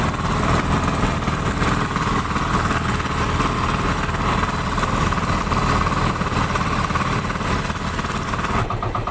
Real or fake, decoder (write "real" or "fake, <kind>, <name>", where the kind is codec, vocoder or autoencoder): real